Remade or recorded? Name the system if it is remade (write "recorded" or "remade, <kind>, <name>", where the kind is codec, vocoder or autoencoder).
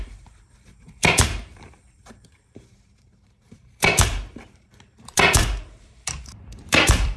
remade, vocoder, BigVGAN v2